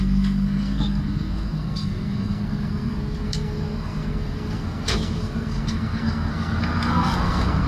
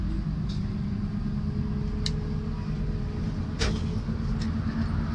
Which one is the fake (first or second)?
first